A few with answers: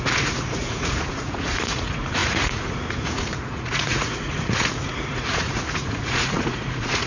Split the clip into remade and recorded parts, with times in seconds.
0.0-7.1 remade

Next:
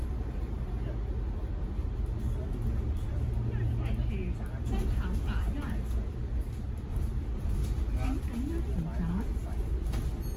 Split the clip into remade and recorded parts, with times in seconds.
0.0-0.6 remade; 0.6-10.4 recorded

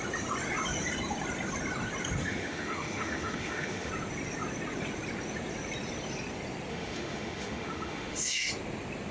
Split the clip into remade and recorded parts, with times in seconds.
0.0-2.2 recorded; 2.2-3.9 remade; 3.9-6.7 recorded; 6.7-8.5 remade; 8.5-9.1 recorded

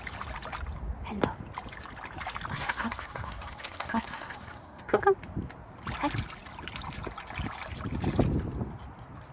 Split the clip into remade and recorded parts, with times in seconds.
0.0-2.5 recorded; 2.5-5.0 remade; 5.0-9.3 recorded

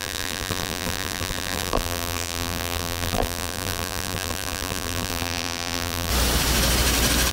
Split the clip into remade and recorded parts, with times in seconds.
0.0-6.1 remade; 6.1-7.3 recorded

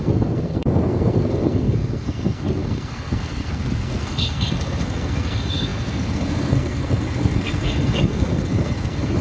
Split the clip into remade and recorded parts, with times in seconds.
0.0-9.2 remade

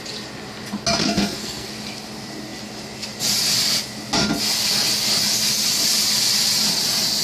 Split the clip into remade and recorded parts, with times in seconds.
0.0-1.0 recorded; 1.0-1.7 remade; 1.7-7.2 recorded